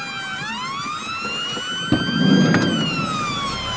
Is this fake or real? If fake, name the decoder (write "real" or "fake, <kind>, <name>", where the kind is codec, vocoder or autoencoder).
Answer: real